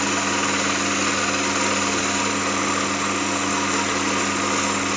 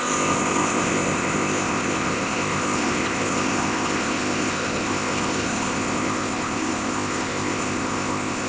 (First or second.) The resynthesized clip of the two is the second